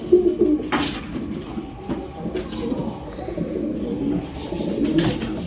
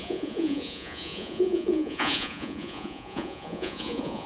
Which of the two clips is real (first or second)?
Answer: first